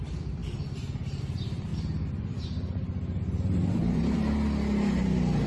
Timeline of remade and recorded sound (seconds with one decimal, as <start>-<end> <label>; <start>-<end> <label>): 0.0-0.4 recorded; 0.4-1.2 remade; 1.2-5.5 recorded